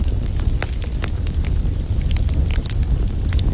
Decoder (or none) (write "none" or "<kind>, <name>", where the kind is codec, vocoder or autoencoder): none